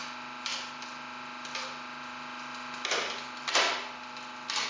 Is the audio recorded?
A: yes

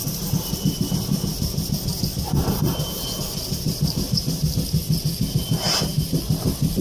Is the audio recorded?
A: yes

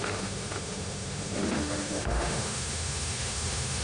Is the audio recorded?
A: no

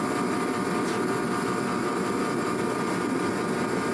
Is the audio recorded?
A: yes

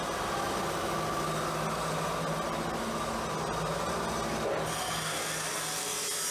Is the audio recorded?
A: yes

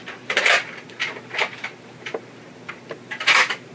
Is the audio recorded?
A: yes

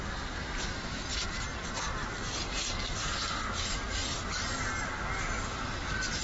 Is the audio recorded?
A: yes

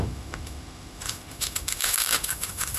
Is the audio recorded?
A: no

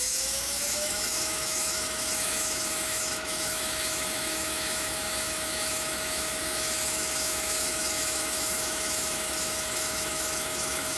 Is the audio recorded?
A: no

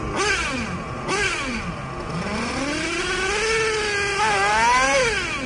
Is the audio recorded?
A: yes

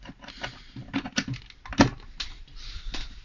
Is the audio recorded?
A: yes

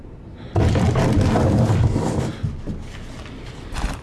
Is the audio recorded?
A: yes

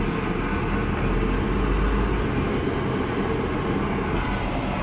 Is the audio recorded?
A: yes